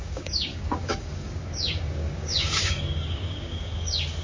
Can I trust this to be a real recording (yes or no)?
no